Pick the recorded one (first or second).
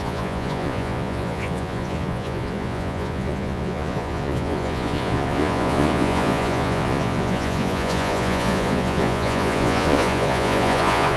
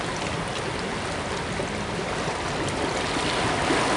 second